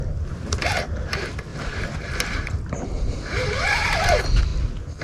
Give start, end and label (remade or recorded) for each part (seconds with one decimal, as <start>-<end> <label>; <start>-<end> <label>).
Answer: 0.0-1.5 recorded; 1.5-4.1 remade; 4.1-5.0 recorded